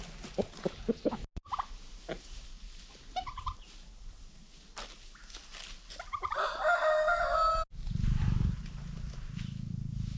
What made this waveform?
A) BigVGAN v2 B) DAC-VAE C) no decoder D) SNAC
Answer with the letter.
C